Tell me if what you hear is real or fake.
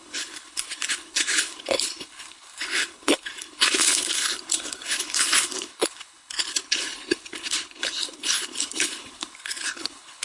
fake